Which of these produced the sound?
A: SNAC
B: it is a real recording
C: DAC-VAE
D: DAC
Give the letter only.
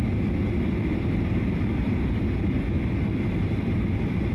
B